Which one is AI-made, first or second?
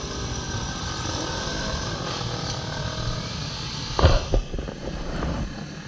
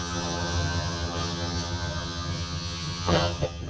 second